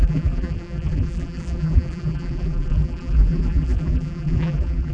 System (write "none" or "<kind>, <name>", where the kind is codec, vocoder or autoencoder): vocoder, BigVGAN v2